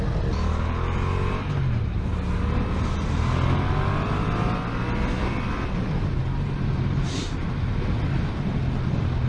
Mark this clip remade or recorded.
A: recorded